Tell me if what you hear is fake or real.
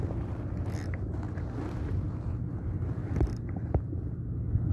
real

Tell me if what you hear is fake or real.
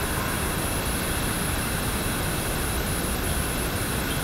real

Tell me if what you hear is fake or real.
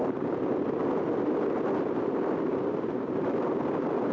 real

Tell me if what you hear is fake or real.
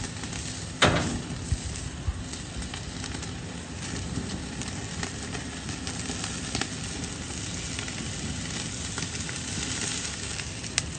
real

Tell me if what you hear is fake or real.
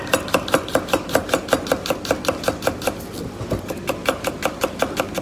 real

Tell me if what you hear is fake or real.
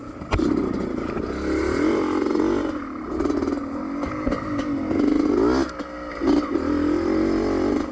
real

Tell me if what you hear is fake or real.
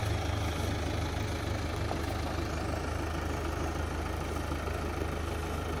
real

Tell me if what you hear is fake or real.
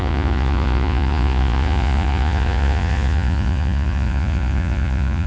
fake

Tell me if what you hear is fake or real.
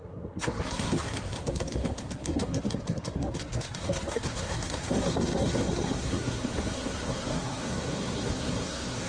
fake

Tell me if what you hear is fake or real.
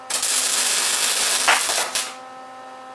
real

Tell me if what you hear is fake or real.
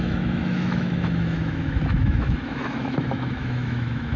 fake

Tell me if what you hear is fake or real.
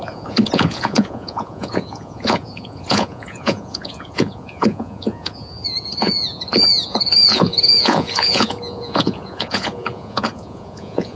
fake